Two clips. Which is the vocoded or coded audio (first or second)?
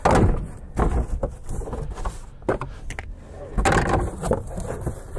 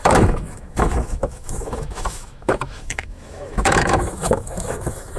second